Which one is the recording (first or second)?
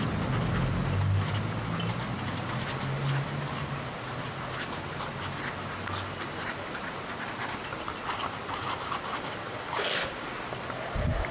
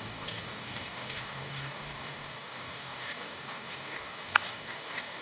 first